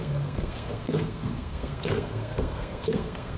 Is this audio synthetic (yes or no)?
yes